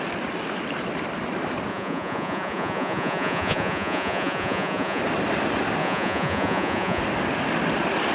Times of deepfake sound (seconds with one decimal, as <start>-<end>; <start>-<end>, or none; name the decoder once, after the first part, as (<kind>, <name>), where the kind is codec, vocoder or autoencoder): 1.7-5.0 (vocoder, Vocos); 5.8-7.0